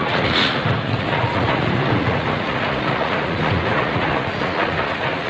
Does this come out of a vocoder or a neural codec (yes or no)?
yes